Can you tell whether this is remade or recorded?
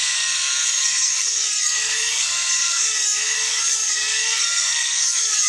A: remade